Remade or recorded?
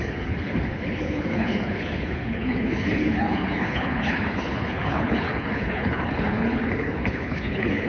remade